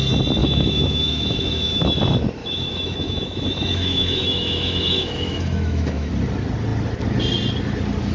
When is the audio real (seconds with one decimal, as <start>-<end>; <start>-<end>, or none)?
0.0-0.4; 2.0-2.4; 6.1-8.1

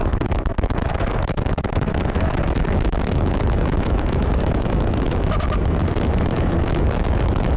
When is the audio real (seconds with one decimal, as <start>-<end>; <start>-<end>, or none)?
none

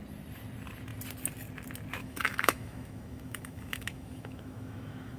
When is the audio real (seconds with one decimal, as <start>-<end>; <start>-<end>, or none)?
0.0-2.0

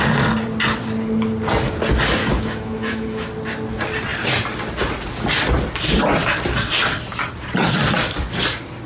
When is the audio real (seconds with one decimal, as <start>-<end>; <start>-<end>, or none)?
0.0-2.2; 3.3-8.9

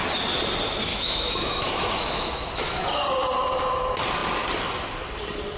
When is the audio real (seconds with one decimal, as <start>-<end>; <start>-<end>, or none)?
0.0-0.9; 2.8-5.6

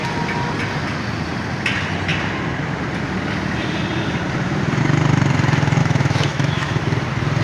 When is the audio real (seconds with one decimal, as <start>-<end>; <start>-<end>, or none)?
0.0-5.8; 6.8-7.4

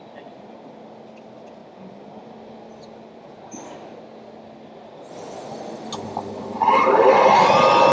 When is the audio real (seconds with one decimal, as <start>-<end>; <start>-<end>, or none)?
0.0-7.9